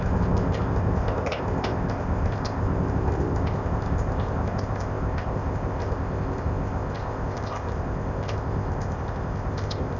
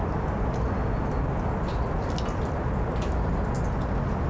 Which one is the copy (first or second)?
first